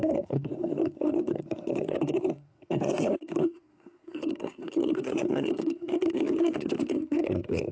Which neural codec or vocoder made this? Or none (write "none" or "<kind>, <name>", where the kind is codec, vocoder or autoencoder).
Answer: codec, SNAC